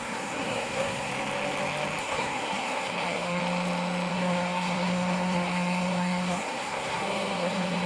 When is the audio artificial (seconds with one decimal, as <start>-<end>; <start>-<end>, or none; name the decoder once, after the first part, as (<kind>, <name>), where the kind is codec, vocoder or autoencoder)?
0.0-1.1 (codec, SNAC); 2.0-3.4; 4.1-7.9